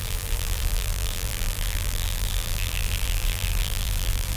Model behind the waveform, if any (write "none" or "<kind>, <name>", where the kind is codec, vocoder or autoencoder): vocoder, BigVGAN v2